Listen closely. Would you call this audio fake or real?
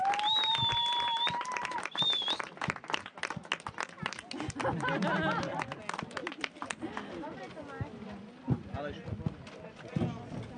real